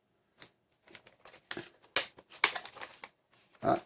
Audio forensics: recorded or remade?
recorded